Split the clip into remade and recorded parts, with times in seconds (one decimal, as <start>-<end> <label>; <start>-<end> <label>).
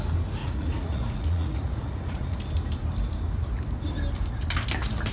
0.0-0.4 recorded; 0.4-2.4 remade; 2.4-5.1 recorded